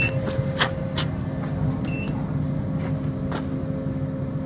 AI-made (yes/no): no